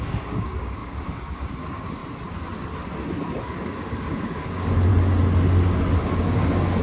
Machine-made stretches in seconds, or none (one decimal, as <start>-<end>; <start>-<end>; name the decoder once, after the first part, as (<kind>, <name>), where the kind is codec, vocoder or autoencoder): 0.0-2.0 (codec, DAC); 3.4-4.9; 6.2-6.8